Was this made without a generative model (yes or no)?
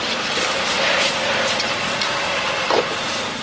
yes